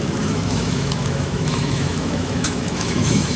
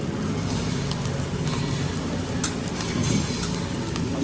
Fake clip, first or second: first